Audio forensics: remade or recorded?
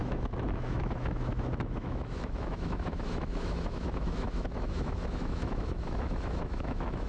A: remade